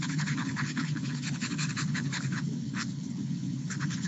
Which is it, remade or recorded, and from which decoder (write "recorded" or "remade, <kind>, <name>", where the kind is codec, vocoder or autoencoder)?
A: remade, codec, HILCodec